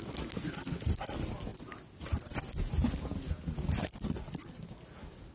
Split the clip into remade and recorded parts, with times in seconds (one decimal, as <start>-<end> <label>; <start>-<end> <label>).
0.0-5.3 recorded